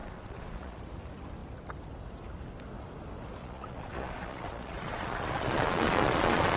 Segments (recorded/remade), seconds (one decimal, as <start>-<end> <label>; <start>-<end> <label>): 0.0-0.8 remade; 0.8-3.4 recorded; 3.4-6.6 remade